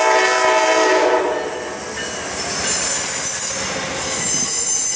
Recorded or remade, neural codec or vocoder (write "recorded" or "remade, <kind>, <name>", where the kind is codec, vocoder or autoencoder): recorded